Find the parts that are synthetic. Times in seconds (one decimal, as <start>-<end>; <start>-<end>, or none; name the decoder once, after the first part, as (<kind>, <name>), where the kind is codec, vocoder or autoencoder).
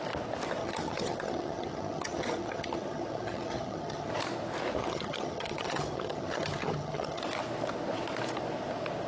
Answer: 0.6-4.1 (vocoder, HiFi-GAN); 4.8-7.2